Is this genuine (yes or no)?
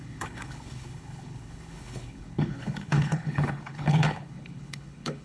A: no